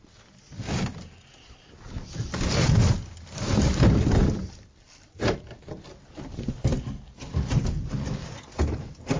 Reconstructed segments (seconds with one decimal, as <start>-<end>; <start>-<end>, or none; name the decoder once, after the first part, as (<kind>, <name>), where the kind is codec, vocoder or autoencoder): none